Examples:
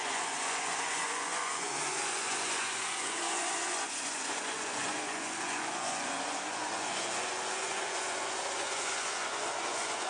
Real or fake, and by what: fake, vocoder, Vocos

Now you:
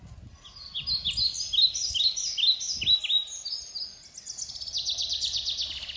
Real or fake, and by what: real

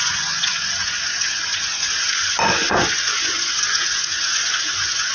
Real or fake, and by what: fake, vocoder, Vocos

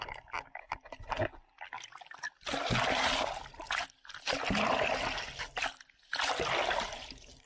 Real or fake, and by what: real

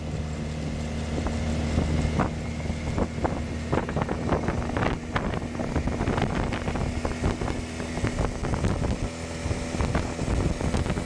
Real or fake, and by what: real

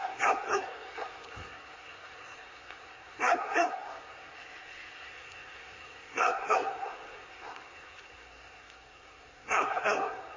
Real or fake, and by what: fake, codec, SNAC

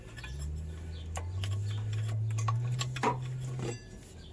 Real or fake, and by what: fake, vocoder, BigVGAN v2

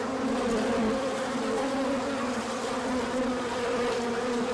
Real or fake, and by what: real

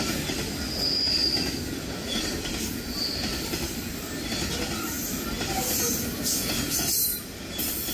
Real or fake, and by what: real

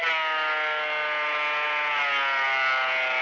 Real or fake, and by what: real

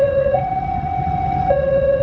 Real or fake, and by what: fake, vocoder, WaveNeXt